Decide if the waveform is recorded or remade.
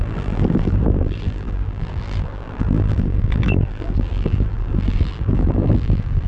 remade